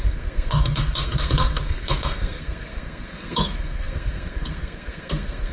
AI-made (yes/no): yes